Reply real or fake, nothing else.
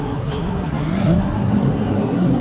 fake